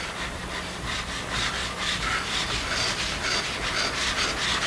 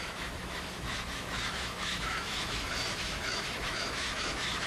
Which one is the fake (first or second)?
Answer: second